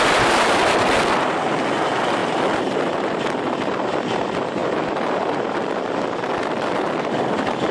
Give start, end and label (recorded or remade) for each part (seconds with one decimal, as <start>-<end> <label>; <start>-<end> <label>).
0.0-2.2 recorded; 2.2-3.5 remade; 3.5-4.6 recorded; 4.6-5.2 remade; 5.2-7.7 recorded